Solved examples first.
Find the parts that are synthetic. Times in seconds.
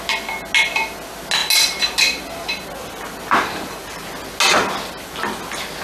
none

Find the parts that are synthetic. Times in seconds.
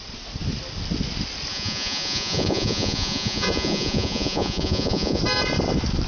1.5-5.2 (vocoder, Vocos)